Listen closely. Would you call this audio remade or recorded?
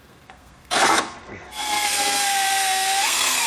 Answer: remade